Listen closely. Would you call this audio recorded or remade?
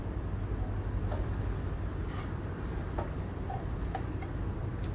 recorded